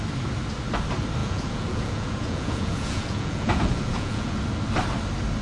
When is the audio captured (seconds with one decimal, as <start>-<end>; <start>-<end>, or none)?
0.0-1.2; 4.4-5.4